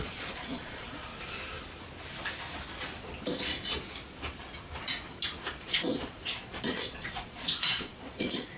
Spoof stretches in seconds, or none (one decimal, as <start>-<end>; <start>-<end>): 0.0-1.1; 5.6-8.6